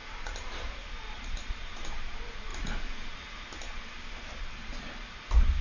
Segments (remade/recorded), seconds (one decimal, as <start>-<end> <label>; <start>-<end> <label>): 0.0-2.5 remade; 2.5-4.4 recorded; 4.4-5.6 remade